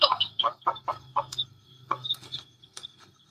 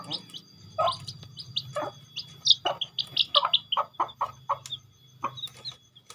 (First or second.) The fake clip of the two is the first